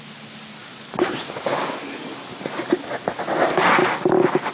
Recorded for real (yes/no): yes